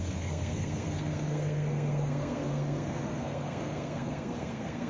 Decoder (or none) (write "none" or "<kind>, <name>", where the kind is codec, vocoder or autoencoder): codec, SNAC